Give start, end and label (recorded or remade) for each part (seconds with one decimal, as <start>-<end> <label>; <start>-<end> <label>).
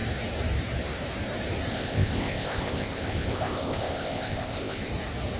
0.0-1.7 recorded; 1.7-4.9 remade; 4.9-5.4 recorded